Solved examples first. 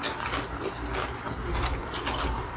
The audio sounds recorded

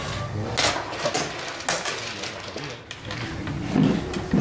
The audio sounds recorded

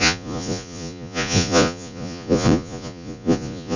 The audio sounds remade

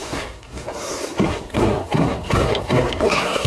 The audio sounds remade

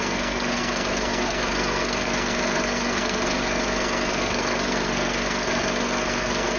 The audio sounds remade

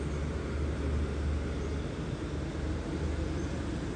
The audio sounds recorded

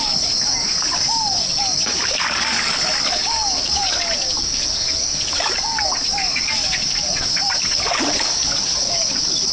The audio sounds remade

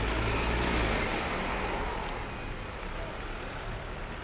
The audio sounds recorded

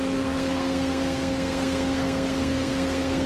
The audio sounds remade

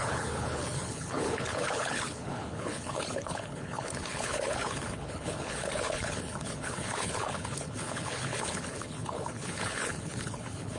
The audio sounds remade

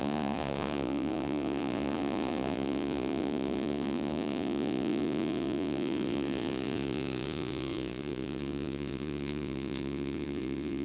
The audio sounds remade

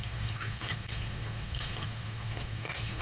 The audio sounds remade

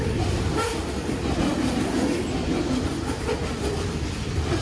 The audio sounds recorded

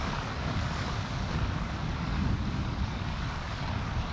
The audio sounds remade